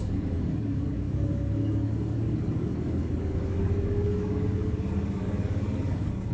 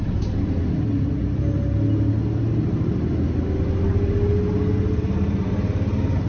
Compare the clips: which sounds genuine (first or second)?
second